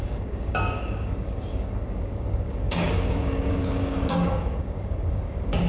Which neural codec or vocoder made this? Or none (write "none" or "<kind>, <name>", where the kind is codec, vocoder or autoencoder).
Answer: codec, DAC